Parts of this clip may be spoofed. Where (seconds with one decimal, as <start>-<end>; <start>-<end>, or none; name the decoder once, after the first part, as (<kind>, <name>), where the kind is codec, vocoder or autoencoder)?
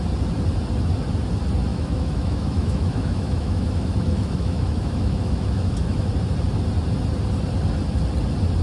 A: 1.7-6.1 (autoencoder, DAC-VAE)